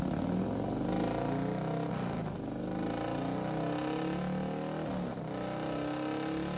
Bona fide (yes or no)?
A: yes